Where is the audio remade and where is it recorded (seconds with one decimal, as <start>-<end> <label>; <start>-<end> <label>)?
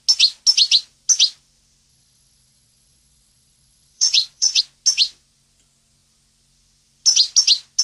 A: 0.0-1.9 recorded; 1.9-4.6 remade; 4.6-7.8 recorded